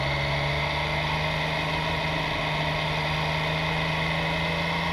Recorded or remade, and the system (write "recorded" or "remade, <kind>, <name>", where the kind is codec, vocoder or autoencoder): recorded